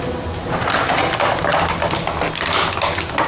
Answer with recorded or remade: remade